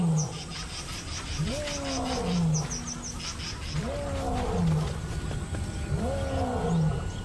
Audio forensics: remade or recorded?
recorded